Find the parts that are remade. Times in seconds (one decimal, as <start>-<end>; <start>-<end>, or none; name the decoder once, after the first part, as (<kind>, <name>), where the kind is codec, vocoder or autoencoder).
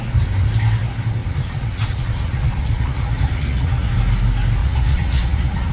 1.2-3.9 (vocoder, Vocos); 4.6-5.7